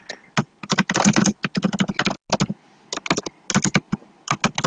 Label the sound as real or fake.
real